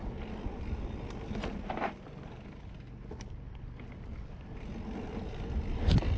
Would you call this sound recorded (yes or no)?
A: yes